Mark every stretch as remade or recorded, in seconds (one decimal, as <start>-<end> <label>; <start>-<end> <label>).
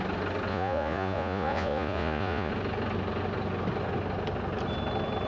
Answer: 0.0-0.5 recorded; 0.5-2.5 remade; 2.5-5.3 recorded